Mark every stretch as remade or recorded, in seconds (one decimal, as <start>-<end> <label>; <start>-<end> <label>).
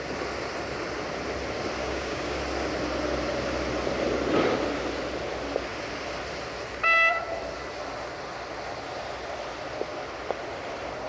0.0-1.8 recorded; 1.8-2.4 remade; 2.4-11.1 recorded